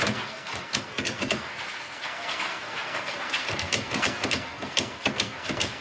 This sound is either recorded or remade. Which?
remade